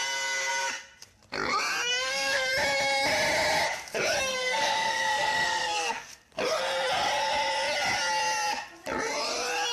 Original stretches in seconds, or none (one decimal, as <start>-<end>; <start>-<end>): 0.0-1.9; 2.5-4.3; 6.1-9.7